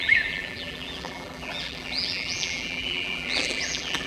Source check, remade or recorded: remade